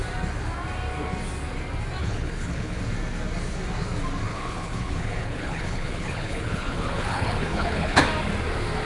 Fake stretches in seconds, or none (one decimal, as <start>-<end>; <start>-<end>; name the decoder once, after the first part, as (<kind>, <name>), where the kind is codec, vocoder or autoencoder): 2.0-2.8 (codec, HILCodec); 4.3-8.0